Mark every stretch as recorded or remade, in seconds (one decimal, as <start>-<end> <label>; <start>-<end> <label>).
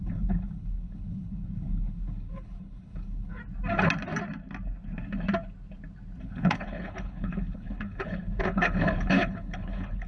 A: 0.0-3.4 remade; 3.4-6.2 recorded; 6.2-10.1 remade